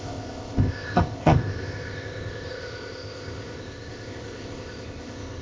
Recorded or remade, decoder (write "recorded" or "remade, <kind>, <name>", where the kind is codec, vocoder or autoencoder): remade, codec, ZipCodec